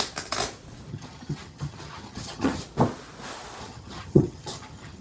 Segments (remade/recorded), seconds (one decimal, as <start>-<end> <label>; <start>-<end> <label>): 0.0-0.9 recorded; 0.9-2.6 remade; 2.6-3.6 recorded; 3.6-5.0 remade